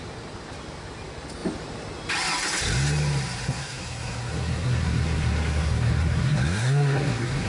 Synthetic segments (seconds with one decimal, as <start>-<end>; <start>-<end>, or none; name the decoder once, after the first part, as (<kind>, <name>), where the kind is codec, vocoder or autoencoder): 3.4-7.5 (codec, SNAC)

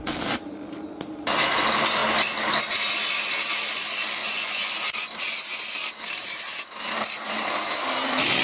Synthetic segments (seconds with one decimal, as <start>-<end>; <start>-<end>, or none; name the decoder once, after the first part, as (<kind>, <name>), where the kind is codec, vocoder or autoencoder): 4.2-4.7 (vocoder, Vocos)

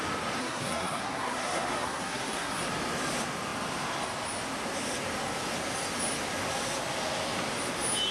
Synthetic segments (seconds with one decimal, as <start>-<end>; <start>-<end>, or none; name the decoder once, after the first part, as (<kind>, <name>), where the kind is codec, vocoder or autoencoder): 0.4-2.6 (codec, SNAC)

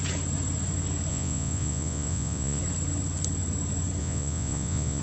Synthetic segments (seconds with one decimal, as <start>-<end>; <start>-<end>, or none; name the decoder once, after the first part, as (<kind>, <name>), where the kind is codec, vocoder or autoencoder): 1.1-2.6 (vocoder, Vocos); 4.0-5.0

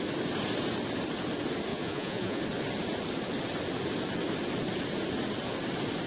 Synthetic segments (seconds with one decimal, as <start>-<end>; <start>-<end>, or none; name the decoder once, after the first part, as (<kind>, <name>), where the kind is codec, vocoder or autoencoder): 1.7-2.4 (vocoder, Vocos)

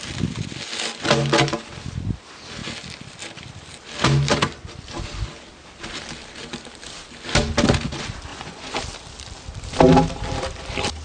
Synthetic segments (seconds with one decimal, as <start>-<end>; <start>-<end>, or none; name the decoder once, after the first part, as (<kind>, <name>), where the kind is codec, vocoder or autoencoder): 8.3-8.8 (vocoder, Vocos)

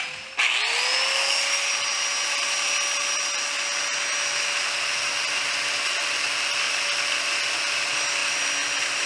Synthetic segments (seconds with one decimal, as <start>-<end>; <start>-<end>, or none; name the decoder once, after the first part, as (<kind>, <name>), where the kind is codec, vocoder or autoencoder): none